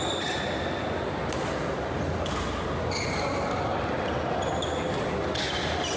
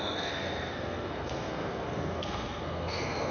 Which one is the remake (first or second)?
second